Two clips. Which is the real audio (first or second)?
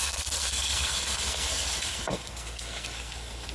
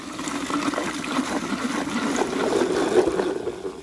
second